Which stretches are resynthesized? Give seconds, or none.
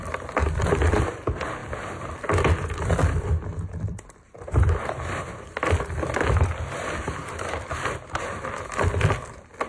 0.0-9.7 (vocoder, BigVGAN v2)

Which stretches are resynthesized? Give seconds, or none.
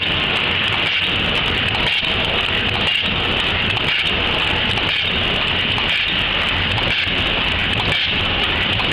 none